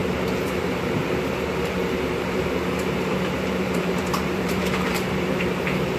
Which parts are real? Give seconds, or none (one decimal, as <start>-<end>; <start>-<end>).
none